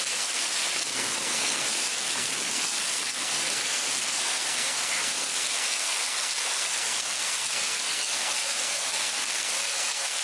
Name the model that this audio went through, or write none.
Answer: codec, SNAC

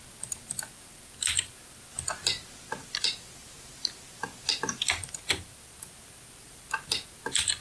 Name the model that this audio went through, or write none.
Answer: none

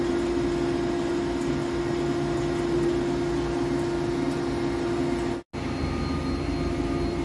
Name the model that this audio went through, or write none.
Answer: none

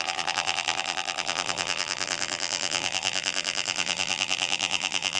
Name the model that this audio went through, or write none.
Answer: vocoder, BigVGAN v2